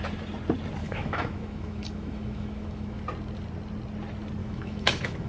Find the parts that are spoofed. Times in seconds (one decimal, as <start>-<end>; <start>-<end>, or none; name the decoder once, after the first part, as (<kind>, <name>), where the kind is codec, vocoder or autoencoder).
0.8-3.0 (autoencoder, DAC-VAE); 4.4-5.3